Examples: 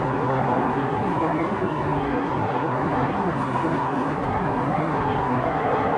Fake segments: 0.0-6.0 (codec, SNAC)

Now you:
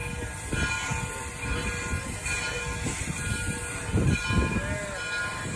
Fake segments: none

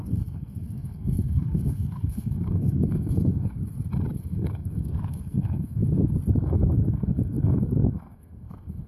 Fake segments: 0.0-3.5 (codec, SNAC); 4.2-5.8; 6.3-8.9